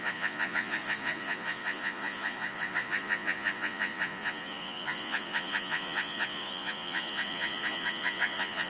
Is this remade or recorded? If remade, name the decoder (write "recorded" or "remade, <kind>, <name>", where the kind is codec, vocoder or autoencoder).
remade, vocoder, Vocos